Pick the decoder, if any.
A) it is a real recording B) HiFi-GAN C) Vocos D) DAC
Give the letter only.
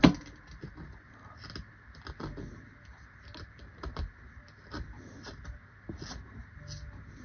A